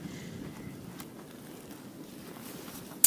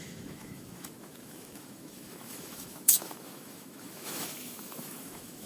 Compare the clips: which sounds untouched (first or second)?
first